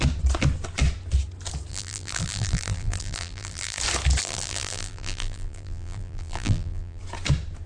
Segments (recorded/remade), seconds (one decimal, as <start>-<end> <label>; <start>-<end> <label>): 0.0-1.7 recorded; 1.7-3.8 remade; 3.8-4.2 recorded; 4.2-7.0 remade; 7.0-7.7 recorded